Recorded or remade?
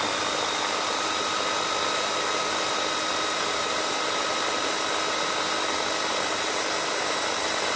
recorded